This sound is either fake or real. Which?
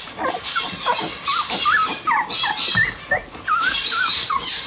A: real